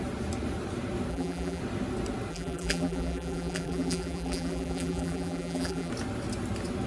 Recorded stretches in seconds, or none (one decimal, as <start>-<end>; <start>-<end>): 0.0-1.1; 1.6-2.3; 5.9-6.9